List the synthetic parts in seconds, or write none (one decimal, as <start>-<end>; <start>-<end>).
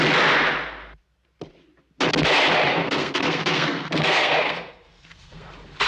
2.7-5.5